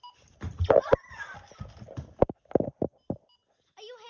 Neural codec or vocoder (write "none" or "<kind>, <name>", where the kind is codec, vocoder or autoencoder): none